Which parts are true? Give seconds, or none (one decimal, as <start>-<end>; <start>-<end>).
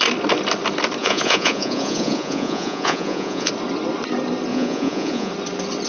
0.0-1.0; 3.5-4.5; 5.3-5.9